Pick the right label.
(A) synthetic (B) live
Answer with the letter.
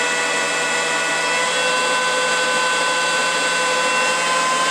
B